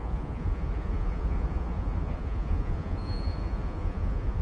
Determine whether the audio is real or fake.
fake